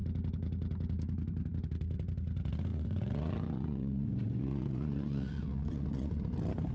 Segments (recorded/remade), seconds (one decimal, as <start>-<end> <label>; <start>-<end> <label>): 0.0-2.7 recorded; 2.7-6.2 remade; 6.2-6.7 recorded